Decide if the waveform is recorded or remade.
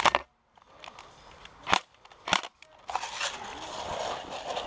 recorded